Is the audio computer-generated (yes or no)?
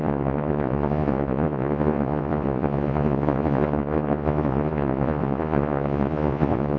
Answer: yes